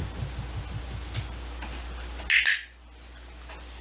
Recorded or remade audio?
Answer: recorded